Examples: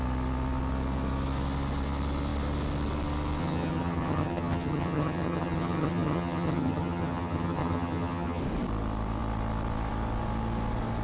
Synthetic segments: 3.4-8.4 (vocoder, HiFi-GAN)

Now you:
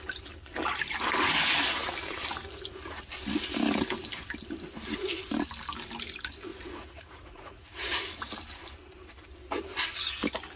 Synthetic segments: 6.5-8.1 (vocoder, Vocos)

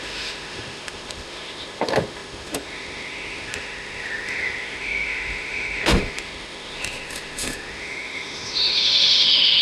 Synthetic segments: 0.0-9.6 (autoencoder, DAC-VAE)